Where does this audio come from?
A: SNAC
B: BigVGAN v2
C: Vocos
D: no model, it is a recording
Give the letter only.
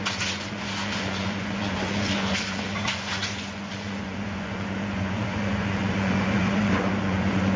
C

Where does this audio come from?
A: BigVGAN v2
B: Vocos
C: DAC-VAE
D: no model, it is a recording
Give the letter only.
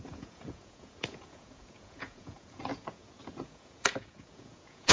B